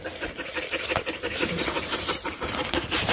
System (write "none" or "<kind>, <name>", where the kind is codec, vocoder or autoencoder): none